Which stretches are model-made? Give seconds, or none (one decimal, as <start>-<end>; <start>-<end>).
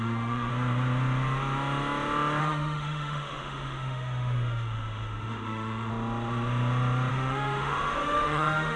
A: 0.0-0.5; 2.4-5.9; 7.1-8.8